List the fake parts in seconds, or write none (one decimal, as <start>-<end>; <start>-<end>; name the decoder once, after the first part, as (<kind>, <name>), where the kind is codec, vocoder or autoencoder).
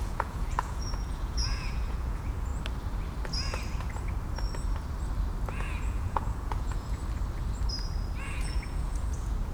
0.0-2.5 (vocoder, Vocos); 5.5-7.0; 8.2-9.5